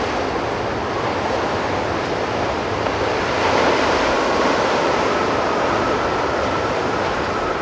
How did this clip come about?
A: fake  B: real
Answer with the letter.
B